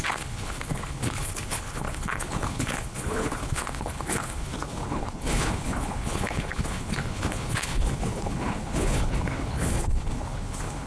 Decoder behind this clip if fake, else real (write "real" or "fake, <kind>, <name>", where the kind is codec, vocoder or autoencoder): fake, codec, HILCodec